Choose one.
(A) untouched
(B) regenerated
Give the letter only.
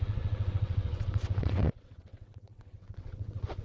B